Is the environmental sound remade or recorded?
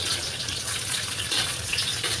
remade